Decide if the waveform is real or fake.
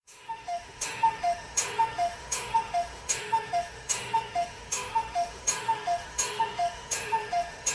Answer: fake